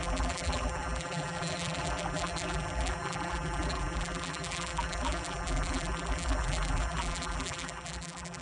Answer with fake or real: fake